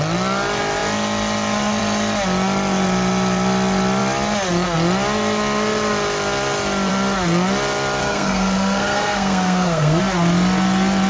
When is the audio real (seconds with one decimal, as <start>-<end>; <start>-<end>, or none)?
0.0-8.0; 10.0-11.1